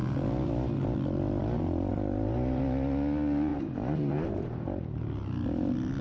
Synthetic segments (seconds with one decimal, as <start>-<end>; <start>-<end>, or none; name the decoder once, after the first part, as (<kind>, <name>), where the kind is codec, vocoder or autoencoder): 1.9-2.6 (vocoder, BigVGAN v2); 3.5-5.0

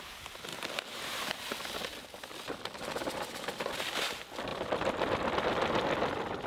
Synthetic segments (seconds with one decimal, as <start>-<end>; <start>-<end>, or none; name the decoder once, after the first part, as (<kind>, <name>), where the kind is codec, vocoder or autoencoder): 0.5-1.4 (vocoder, BigVGAN v2)

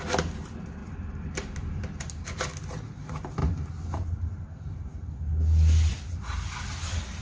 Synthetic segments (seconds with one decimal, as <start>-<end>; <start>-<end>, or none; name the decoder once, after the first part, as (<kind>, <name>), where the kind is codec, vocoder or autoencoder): 0.8-1.8 (vocoder, BigVGAN v2); 3.4-4.8

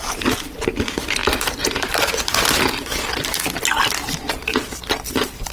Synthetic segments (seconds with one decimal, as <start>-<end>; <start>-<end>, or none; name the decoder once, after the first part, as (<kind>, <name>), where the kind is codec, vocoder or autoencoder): 1.2-2.0 (vocoder, BigVGAN v2)

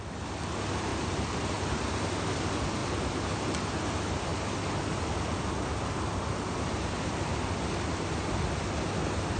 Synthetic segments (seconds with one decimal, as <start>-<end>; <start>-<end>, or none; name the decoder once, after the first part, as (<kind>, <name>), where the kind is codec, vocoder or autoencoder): 0.9-1.7 (vocoder, BigVGAN v2); 2.8-3.4

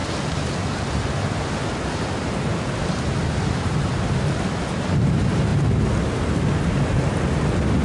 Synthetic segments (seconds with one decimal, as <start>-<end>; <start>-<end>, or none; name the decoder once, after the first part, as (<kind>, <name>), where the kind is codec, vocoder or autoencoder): 2.0-5.5 (vocoder, BigVGAN v2); 6.1-7.8

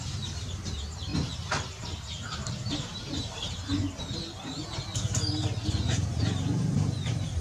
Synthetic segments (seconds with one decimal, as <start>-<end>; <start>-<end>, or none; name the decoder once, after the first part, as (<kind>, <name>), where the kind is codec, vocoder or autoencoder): 0.0-1.1 (vocoder, BigVGAN v2); 2.5-3.7; 5.9-7.4

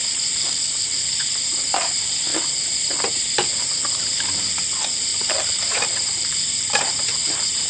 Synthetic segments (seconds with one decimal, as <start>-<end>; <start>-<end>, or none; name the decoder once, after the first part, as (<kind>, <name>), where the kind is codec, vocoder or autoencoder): 0.0-1.9 (vocoder, BigVGAN v2); 5.1-6.9